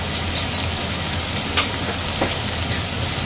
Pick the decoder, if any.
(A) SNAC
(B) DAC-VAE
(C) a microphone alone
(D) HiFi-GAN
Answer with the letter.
C